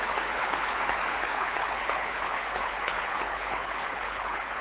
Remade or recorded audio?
remade